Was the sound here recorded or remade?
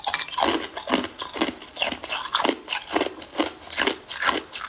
recorded